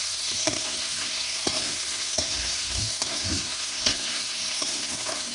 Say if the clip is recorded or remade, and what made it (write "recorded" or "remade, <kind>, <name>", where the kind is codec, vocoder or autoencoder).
remade, codec, SNAC